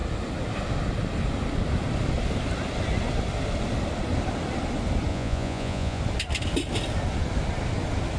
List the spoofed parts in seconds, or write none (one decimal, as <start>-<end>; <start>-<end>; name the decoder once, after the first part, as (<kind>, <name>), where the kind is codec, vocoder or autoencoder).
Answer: 5.1-6.0 (vocoder, Vocos)